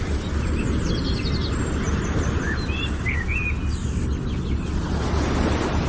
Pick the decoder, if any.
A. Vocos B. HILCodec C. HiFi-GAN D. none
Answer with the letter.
D